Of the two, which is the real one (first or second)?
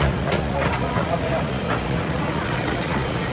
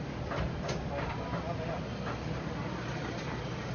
second